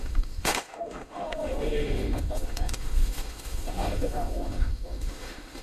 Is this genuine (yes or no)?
no